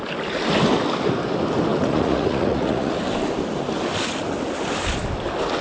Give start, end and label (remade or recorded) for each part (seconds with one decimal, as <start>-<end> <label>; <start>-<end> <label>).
0.0-1.7 recorded; 1.7-3.0 remade; 3.0-5.6 recorded